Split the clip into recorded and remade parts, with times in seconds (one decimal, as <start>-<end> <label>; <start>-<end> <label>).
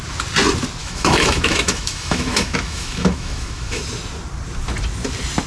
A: 0.0-0.8 recorded; 0.8-3.8 remade; 3.8-5.5 recorded